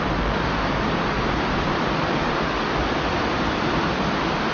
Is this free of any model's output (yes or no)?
yes